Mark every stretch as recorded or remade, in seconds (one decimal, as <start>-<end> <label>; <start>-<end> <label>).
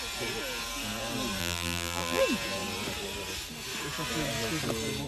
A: 0.0-1.4 recorded; 1.4-2.2 remade; 2.2-5.1 recorded